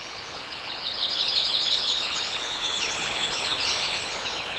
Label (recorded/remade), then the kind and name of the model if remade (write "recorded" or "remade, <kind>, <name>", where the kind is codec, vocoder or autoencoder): remade, codec, HILCodec